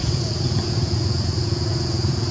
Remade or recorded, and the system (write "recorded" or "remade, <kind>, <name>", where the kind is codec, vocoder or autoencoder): remade, vocoder, Vocos